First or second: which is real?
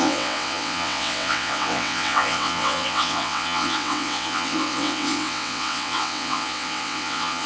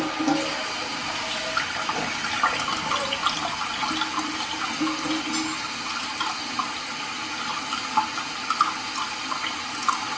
second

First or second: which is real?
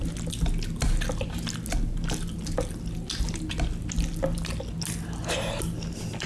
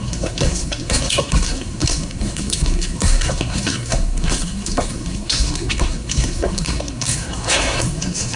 first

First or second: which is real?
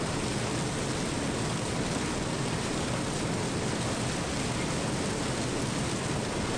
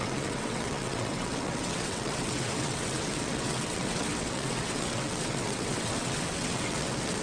first